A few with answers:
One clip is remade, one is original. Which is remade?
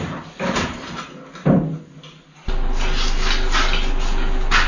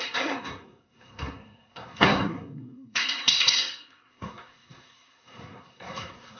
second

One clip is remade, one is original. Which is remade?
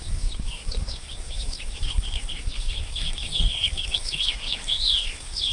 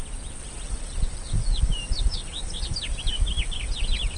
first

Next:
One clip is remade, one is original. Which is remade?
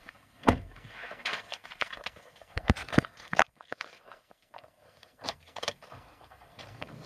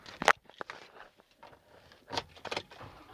first